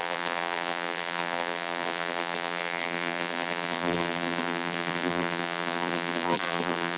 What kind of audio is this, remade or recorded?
remade